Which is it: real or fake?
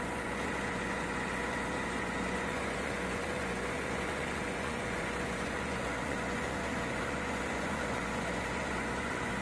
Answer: fake